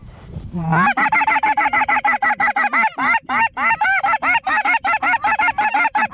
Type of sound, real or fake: real